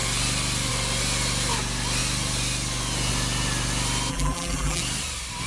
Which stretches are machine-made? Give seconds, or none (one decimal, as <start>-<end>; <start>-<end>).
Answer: 4.1-4.8